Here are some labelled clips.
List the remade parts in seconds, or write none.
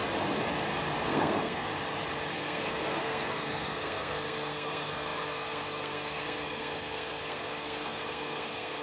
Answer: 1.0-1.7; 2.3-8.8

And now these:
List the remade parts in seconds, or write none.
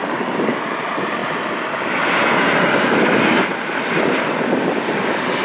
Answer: none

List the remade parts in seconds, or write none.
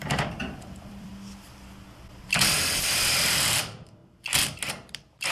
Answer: 0.0-1.1; 2.1-4.0; 4.7-5.3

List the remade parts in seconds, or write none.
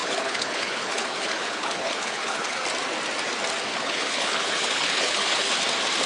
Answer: 0.0-2.6; 3.7-5.5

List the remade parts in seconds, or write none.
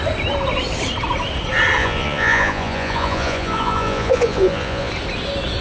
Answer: 1.8-4.9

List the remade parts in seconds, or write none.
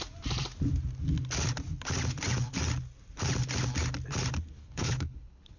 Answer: 4.6-5.6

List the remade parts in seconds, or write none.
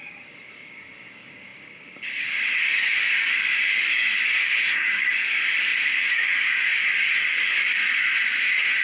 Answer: 0.0-8.8